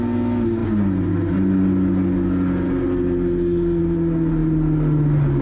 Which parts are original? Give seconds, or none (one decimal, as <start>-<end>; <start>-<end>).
0.0-5.4